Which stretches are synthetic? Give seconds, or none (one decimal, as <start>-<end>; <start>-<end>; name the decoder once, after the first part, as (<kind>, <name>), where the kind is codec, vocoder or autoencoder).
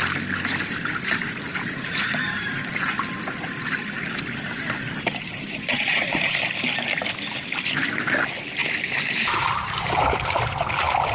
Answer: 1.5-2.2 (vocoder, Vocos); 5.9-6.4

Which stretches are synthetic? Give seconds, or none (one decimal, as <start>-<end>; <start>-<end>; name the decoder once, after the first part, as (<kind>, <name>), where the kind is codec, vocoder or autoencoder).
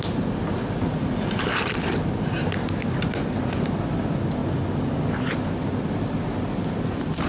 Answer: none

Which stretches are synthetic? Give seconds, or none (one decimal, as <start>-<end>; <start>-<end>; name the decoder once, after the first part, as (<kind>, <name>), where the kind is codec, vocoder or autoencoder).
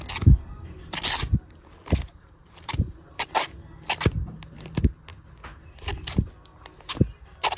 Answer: none